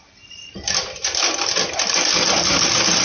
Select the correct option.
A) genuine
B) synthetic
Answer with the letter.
A